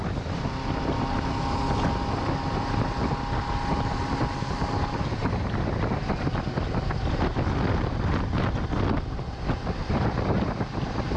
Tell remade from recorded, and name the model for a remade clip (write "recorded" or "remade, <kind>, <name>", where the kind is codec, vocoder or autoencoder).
recorded